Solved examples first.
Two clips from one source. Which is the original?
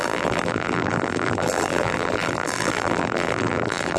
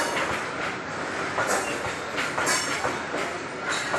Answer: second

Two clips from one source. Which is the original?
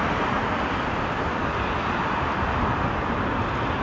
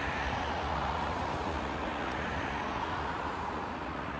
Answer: first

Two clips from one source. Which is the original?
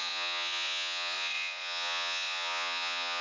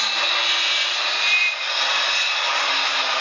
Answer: second